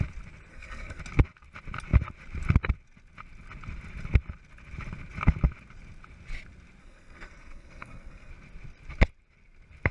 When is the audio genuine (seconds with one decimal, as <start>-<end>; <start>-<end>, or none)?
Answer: 0.0-0.5; 1.0-6.8; 8.3-9.9